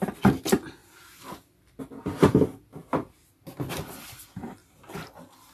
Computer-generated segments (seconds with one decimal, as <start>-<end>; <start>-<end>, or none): 4.6-5.1